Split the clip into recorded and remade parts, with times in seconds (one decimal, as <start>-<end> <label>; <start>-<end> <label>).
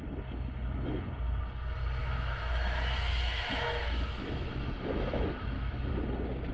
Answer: 0.0-2.0 recorded; 2.0-5.9 remade; 5.9-6.5 recorded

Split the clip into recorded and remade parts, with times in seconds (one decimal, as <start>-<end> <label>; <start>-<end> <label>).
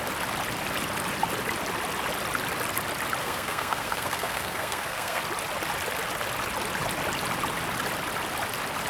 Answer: 0.0-3.2 recorded; 3.2-5.2 remade; 5.2-8.9 recorded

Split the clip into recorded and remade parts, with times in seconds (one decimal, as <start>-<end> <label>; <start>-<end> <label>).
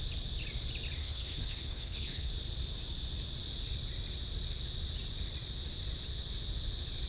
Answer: 0.0-1.0 recorded; 1.0-2.3 remade; 2.3-7.1 recorded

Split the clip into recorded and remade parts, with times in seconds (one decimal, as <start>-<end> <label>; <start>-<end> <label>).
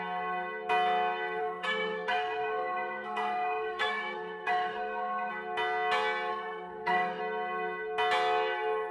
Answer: 0.0-1.4 recorded; 1.4-5.3 remade; 5.3-6.3 recorded; 6.3-7.2 remade; 7.2-8.9 recorded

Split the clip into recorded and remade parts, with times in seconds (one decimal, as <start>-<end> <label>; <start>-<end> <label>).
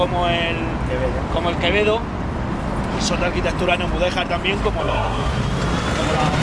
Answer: 0.0-4.8 recorded; 4.8-5.3 remade; 5.3-6.4 recorded